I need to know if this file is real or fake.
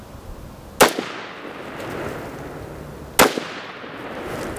real